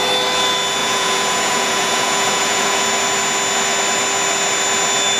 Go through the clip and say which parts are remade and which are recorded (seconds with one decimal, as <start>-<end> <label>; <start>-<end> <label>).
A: 0.0-0.8 recorded; 0.8-2.8 remade; 2.8-5.2 recorded